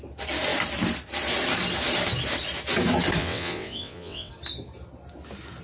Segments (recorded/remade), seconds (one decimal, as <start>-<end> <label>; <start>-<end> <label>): 0.0-3.2 recorded; 3.2-4.3 remade; 4.3-5.6 recorded